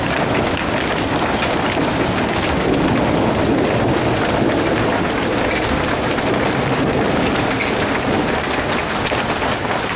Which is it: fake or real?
real